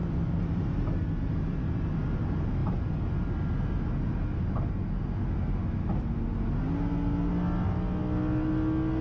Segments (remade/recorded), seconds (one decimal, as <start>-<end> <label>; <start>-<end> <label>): 0.0-9.0 recorded